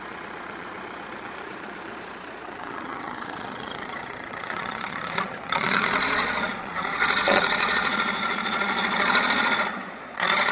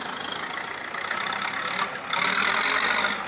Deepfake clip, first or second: first